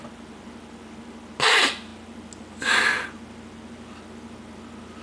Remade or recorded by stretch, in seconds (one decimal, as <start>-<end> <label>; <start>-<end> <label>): 0.0-5.0 recorded

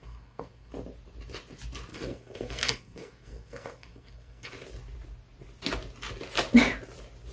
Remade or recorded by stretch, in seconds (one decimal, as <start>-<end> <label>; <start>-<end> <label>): 0.0-0.7 remade; 0.7-1.9 recorded; 1.9-4.5 remade; 4.5-7.3 recorded

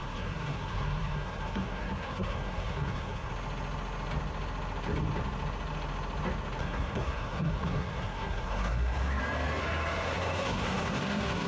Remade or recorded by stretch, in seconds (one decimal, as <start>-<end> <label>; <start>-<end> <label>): 0.0-3.3 remade; 3.3-6.6 recorded; 6.6-9.2 remade; 9.2-9.6 recorded; 9.6-11.5 remade

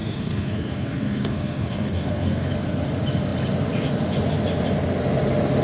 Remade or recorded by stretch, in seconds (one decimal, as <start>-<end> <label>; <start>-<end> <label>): 0.0-2.5 remade; 2.5-5.6 recorded